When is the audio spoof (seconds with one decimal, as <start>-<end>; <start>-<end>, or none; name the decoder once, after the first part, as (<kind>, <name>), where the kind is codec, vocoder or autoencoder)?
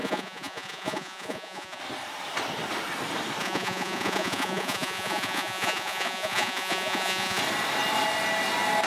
0.0-1.8 (vocoder, Vocos); 3.4-7.4